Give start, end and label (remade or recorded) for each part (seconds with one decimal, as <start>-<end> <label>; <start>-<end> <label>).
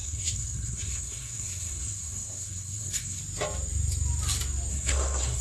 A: 0.0-3.2 remade; 3.2-4.7 recorded; 4.7-5.4 remade